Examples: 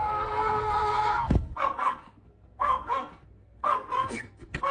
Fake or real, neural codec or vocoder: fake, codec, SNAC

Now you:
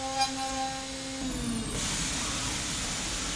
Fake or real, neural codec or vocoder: real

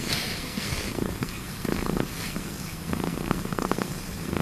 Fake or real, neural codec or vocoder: fake, codec, SNAC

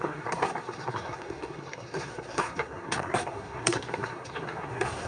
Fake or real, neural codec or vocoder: fake, codec, SNAC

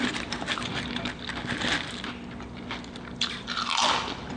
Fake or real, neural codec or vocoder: real